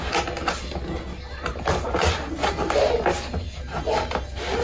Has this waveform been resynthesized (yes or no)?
no